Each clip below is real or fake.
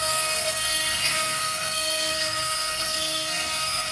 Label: fake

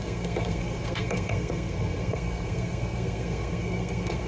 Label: fake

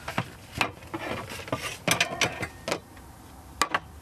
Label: real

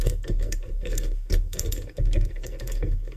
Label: fake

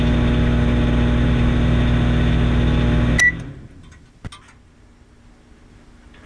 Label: real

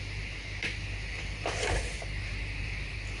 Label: real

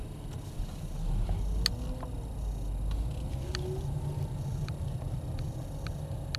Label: real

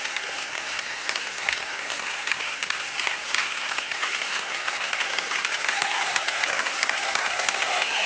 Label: fake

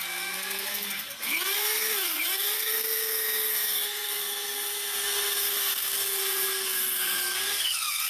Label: fake